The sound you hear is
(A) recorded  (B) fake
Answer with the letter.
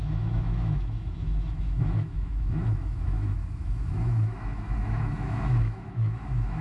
B